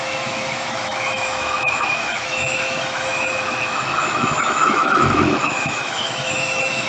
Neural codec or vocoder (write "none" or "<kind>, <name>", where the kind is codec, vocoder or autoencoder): autoencoder, DAC-VAE